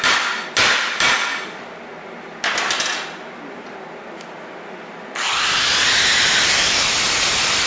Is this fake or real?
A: real